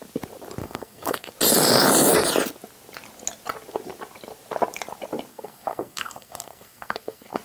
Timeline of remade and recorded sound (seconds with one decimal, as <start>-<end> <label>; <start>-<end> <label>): 0.0-0.6 recorded; 0.6-1.3 remade; 1.3-5.3 recorded; 5.3-7.4 remade